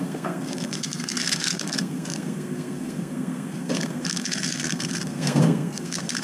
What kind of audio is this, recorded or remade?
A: remade